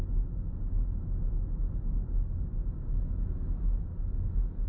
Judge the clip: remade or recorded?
recorded